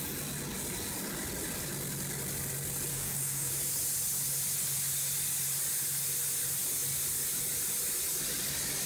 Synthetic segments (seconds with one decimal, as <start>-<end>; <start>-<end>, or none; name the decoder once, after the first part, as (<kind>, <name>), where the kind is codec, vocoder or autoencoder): 2.9-3.5 (codec, DAC)